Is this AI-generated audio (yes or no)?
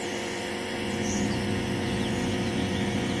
yes